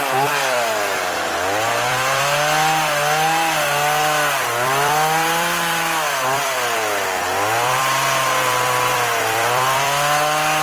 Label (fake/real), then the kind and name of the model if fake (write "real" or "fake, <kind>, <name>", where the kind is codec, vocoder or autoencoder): fake, vocoder, BigVGAN v2